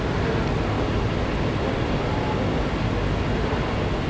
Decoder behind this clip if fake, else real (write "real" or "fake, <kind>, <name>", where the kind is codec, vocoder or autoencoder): real